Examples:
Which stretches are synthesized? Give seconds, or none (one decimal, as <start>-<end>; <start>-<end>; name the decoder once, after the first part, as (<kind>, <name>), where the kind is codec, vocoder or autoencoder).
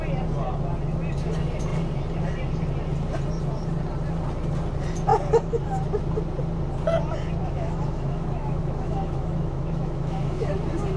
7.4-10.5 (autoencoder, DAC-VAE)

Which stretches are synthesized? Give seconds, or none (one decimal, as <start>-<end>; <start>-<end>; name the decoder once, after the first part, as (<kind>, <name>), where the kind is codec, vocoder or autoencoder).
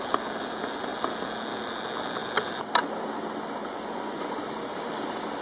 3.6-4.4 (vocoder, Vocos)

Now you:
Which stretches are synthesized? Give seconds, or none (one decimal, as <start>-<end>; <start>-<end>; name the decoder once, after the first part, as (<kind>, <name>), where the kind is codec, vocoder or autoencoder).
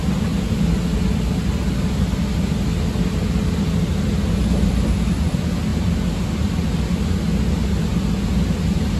none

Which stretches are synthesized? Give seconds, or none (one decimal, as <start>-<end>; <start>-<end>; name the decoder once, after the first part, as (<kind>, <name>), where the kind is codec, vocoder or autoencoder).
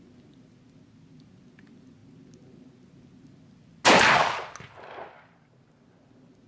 none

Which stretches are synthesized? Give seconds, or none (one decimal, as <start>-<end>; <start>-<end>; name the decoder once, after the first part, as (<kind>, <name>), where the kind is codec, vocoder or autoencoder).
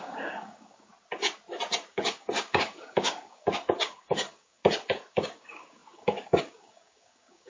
0.0-0.9 (codec, DAC); 1.9-4.6; 5.1-7.5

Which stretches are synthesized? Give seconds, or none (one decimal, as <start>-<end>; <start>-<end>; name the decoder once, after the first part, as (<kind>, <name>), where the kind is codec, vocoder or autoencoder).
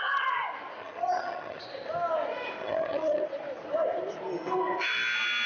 0.8-1.6 (vocoder, HiFi-GAN); 2.6-3.2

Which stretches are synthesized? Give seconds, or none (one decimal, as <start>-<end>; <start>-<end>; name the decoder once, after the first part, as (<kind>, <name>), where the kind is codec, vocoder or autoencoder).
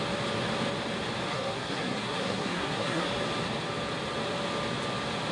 1.3-3.1 (codec, SNAC)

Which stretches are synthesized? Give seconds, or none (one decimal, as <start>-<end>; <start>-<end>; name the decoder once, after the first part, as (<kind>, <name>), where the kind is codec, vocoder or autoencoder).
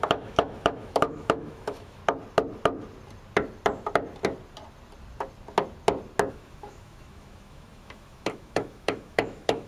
0.0-2.0 (autoencoder, DAC-VAE); 6.3-9.7